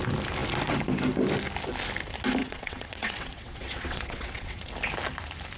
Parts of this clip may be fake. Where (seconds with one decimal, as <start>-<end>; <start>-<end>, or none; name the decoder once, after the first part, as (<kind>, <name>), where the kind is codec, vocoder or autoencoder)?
2.4-4.7 (vocoder, WaveNeXt)